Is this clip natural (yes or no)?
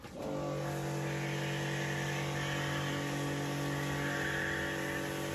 yes